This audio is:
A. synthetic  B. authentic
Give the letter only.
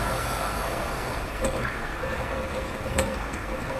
A